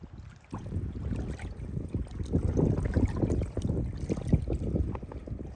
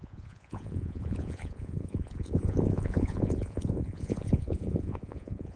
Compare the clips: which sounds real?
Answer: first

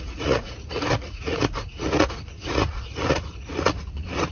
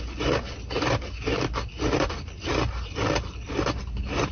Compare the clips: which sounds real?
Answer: second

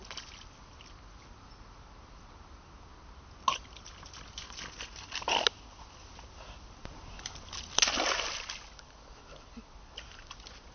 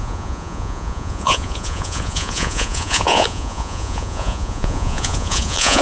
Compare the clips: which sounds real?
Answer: first